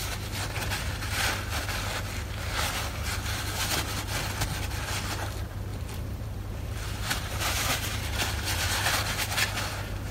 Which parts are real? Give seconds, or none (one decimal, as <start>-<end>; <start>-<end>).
0.0-5.7; 7.4-10.1